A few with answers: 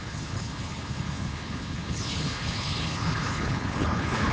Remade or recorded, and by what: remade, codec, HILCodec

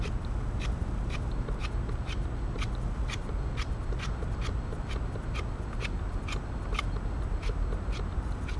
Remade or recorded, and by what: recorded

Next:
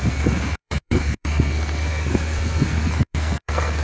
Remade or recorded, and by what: remade, codec, SNAC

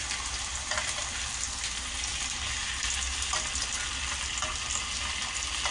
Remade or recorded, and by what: recorded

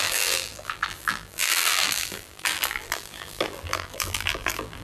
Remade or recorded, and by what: remade, vocoder, BigVGAN v2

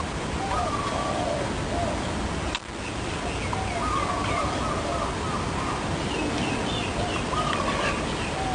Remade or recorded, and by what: recorded